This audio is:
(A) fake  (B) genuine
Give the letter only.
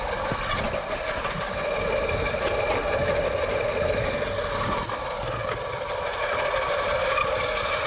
B